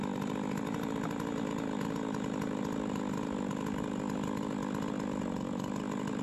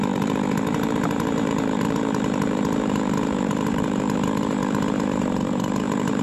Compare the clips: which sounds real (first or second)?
first